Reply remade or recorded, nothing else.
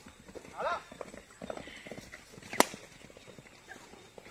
recorded